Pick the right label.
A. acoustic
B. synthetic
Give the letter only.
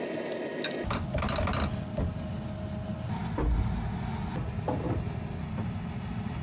A